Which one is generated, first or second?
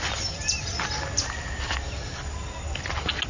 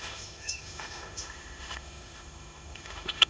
second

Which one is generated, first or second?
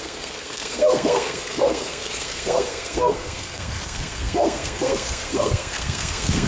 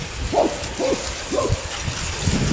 first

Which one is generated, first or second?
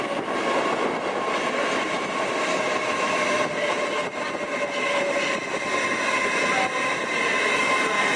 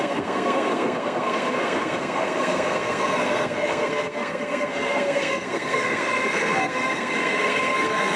second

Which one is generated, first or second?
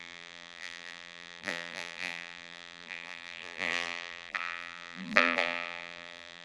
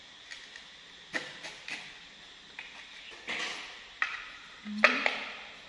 first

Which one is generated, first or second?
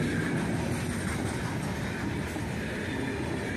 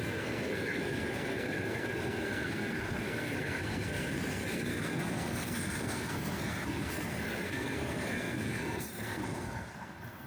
second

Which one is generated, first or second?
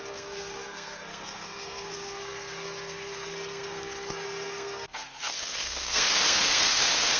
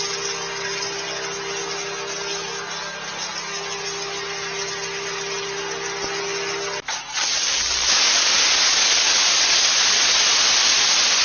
first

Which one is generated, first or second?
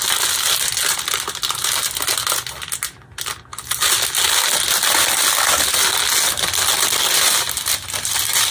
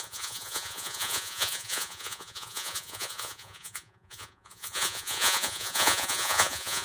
second